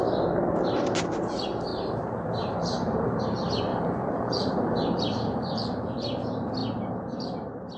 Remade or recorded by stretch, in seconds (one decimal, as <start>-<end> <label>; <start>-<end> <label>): 0.0-1.7 recorded; 1.7-3.2 remade; 3.2-3.7 recorded; 3.7-6.0 remade; 6.0-7.8 recorded